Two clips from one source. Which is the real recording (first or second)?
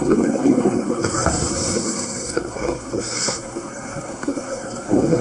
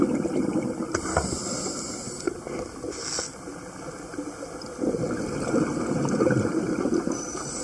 second